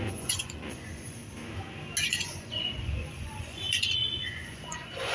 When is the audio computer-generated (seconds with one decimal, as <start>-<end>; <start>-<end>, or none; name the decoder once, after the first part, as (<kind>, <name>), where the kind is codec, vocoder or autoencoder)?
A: 0.0-1.2 (vocoder, Vocos); 2.1-5.1

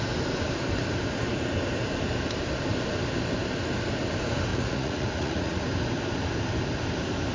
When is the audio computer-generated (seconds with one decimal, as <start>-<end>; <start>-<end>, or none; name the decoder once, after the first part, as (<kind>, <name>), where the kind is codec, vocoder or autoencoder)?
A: 4.5-5.6 (vocoder, Vocos)

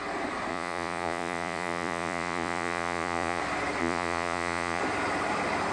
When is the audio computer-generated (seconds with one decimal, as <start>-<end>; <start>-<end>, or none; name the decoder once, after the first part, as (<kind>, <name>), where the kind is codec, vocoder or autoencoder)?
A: 0.5-3.4 (vocoder, Vocos); 3.8-4.8

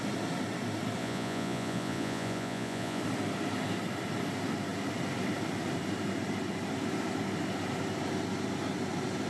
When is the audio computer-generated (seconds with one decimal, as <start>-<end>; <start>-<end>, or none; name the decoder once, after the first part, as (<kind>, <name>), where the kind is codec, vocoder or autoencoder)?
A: 1.0-3.0 (vocoder, Vocos)

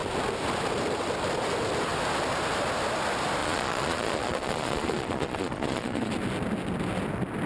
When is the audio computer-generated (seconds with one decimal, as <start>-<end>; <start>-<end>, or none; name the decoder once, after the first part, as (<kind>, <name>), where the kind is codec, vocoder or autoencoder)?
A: 3.4-6.1 (vocoder, Vocos)

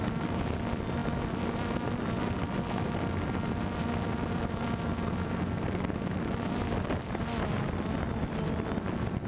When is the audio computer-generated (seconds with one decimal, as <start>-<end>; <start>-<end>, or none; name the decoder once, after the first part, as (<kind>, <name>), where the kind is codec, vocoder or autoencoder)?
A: none

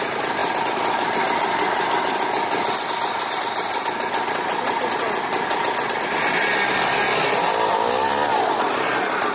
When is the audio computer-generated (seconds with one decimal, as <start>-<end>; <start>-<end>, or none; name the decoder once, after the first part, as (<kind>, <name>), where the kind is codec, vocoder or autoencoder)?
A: none